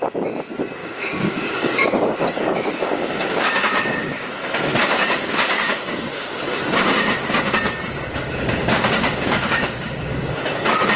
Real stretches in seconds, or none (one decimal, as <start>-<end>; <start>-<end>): 0.0-0.8; 4.3-4.7; 7.2-8.1; 10.4-11.0